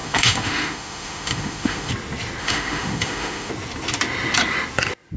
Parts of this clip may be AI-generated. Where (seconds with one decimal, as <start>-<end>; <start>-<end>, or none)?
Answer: 0.0-1.9; 2.4-3.5